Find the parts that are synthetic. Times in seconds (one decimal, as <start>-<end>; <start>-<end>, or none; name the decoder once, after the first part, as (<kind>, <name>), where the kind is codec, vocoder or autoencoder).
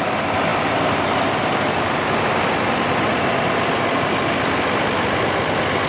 none